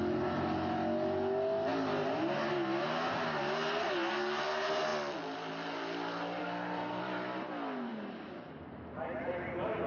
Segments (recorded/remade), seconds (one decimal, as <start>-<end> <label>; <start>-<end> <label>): 0.0-6.4 recorded; 6.4-7.0 remade; 7.0-9.9 recorded